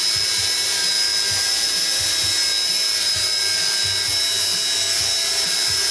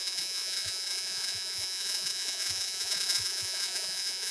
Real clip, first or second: first